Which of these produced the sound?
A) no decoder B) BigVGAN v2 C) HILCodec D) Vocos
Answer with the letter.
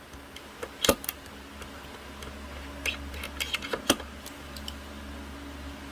A